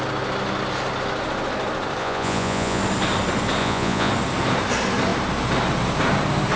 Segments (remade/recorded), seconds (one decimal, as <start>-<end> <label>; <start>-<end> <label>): 0.0-2.0 recorded; 2.0-2.8 remade; 2.8-3.6 recorded; 3.6-4.1 remade; 4.1-6.6 recorded